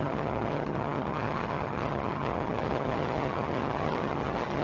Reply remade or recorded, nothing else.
remade